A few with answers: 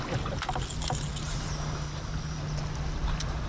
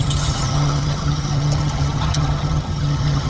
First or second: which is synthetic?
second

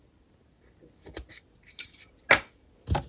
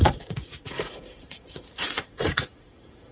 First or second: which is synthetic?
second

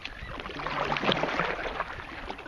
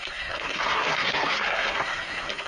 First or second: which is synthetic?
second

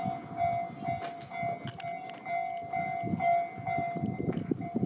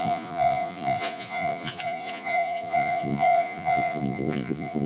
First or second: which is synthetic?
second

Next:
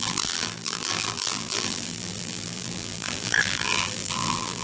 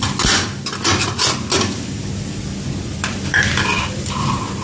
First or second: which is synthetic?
first